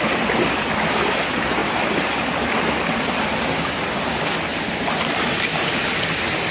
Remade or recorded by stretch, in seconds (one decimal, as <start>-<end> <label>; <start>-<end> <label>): 0.0-6.5 recorded